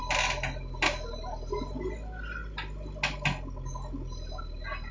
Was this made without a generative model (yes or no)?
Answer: yes